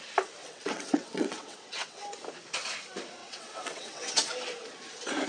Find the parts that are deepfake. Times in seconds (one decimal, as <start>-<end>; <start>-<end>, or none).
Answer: 0.4-2.0; 3.2-4.3